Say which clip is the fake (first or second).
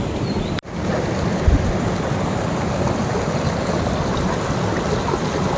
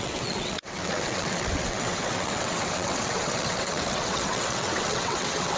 second